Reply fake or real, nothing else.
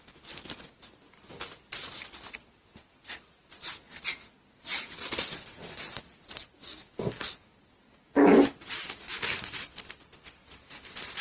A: real